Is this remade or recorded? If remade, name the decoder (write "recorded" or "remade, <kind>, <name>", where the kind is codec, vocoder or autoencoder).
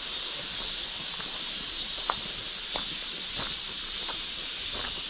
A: recorded